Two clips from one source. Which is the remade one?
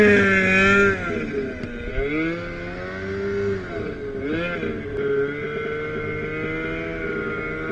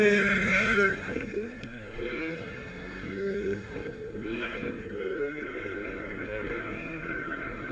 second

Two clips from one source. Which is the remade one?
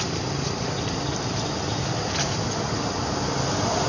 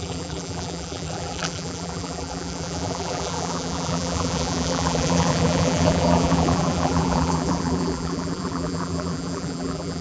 second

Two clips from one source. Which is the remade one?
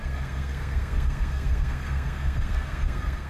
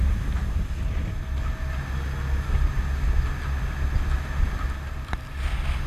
first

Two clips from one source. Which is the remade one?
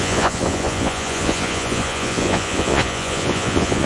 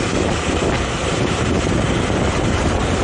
first